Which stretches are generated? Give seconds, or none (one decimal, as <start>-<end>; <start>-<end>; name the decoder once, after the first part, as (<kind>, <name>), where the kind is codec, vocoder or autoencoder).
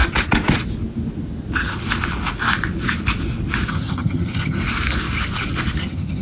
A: 3.7-4.6 (vocoder, HiFi-GAN); 5.8-6.2